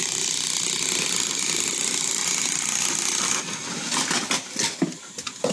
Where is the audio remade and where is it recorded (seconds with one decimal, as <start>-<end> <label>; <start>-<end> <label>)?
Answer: 0.0-5.5 recorded